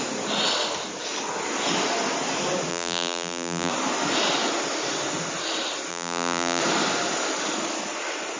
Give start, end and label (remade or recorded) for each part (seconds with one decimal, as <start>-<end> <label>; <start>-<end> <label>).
0.0-2.7 recorded; 2.7-3.7 remade; 3.7-5.9 recorded; 5.9-6.6 remade; 6.6-8.4 recorded